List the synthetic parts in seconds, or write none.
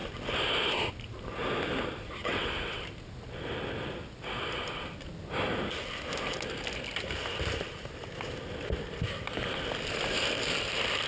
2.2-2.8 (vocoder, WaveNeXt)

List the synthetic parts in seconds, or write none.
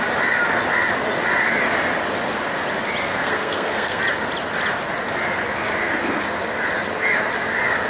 3.0-4.0 (codec, SNAC)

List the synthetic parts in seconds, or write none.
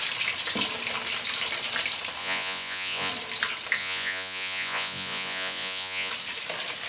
2.2-3.1 (vocoder, Vocos); 3.8-6.1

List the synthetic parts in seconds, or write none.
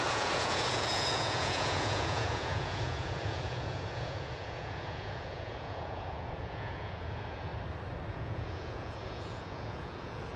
0.0-7.5 (vocoder, Vocos); 8.1-10.4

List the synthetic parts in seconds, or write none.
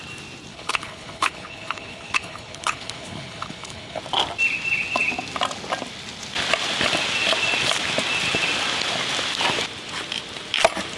0.5-4.0 (codec, HILCodec)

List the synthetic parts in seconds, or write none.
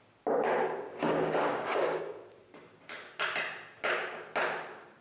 1.0-2.0 (codec, DAC)